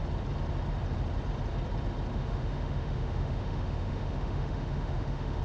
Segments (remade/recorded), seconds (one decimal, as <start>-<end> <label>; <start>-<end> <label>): 0.0-2.1 recorded; 2.1-5.4 remade